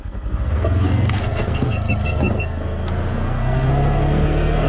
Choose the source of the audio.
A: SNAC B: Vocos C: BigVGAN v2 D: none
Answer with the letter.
A